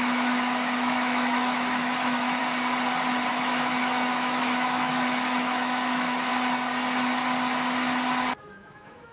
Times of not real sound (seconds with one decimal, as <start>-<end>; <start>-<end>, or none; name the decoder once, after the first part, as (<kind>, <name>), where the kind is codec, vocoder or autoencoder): 0.0-2.4 (autoencoder, DAC-VAE); 3.3-6.3; 8.4-9.1

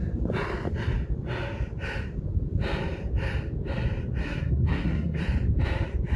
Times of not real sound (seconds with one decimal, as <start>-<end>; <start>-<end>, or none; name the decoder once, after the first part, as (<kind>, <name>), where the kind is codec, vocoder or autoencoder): 4.2-5.2 (codec, SNAC)